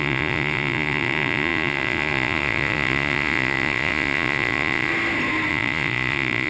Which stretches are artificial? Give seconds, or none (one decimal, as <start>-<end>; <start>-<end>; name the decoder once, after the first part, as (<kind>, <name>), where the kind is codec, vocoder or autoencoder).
0.0-4.9 (vocoder, Vocos); 5.5-6.5